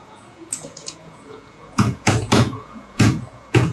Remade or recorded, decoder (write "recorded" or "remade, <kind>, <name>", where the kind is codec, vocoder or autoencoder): remade, vocoder, Vocos